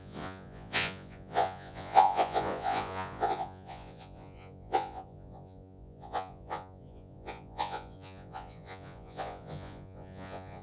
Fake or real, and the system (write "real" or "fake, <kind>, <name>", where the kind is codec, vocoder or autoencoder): fake, vocoder, Vocos